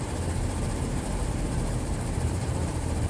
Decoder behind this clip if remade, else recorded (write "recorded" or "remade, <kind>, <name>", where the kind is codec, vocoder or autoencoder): remade, vocoder, BigVGAN v2